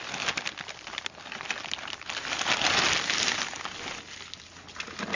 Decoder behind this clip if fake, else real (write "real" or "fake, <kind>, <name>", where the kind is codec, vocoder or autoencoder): real